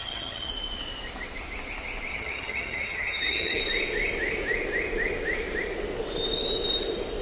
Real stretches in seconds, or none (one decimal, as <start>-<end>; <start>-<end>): 0.5-2.1; 3.6-7.2